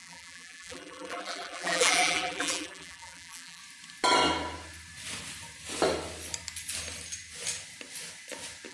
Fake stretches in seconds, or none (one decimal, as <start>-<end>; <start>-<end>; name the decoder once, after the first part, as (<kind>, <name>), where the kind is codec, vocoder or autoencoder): 0.0-3.6 (vocoder, BigVGAN v2)